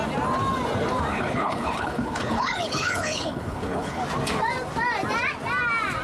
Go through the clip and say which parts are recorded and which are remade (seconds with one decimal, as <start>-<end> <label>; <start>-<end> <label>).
0.0-1.1 recorded; 1.1-4.0 remade; 4.0-6.0 recorded